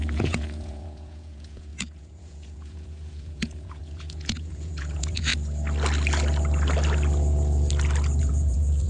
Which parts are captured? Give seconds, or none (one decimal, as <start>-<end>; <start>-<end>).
5.3-8.2